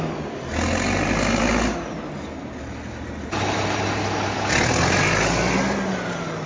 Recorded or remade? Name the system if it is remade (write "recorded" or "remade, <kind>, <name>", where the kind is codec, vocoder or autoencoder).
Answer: recorded